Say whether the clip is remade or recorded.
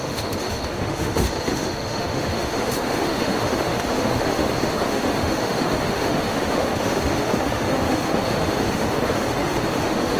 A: remade